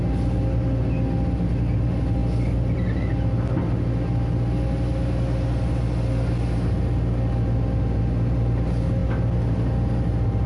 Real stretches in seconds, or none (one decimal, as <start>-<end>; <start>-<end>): 0.0-10.5